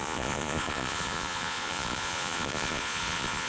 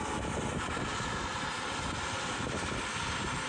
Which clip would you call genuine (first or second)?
second